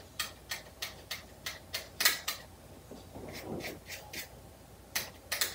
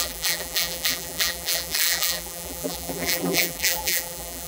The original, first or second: first